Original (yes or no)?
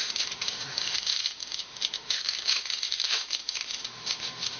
no